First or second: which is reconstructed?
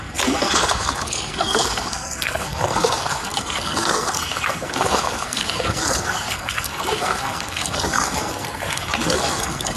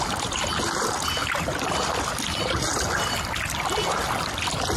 first